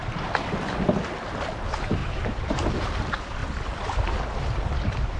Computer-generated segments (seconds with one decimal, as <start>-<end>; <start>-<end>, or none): 2.0-2.9